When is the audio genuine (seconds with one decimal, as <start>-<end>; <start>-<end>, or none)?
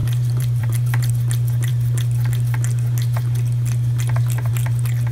1.1-5.1